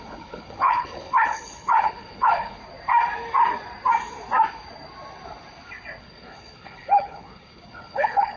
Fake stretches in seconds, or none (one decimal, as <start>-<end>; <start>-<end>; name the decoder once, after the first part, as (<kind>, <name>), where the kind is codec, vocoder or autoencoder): 0.0-2.6 (codec, HILCodec); 6.0-8.4